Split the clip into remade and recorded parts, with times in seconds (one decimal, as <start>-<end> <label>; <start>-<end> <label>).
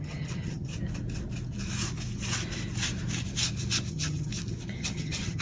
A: 0.0-0.7 remade; 0.7-3.9 recorded; 3.9-4.3 remade; 4.3-4.8 recorded; 4.8-5.4 remade